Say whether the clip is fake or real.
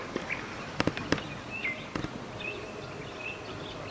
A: real